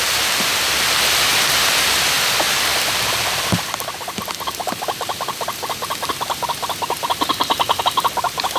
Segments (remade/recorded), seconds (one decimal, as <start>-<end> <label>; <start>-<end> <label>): 0.0-2.7 recorded; 2.7-7.8 remade; 7.8-8.6 recorded